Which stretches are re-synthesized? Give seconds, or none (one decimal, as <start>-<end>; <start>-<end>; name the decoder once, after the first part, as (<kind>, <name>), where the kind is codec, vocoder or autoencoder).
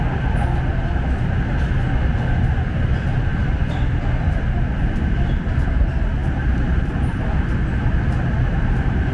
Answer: none